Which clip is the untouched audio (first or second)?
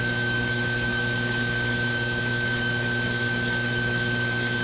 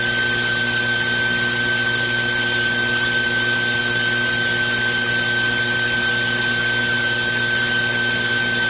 second